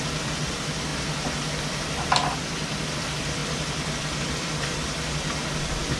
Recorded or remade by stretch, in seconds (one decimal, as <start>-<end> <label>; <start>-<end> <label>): 0.0-0.9 remade; 0.9-2.0 recorded; 2.0-6.0 remade